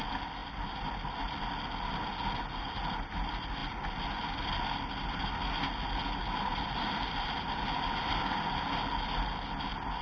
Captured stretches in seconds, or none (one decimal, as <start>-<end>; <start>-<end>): 0.0-10.0